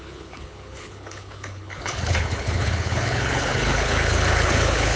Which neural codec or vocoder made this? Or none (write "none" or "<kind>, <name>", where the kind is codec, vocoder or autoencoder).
codec, HILCodec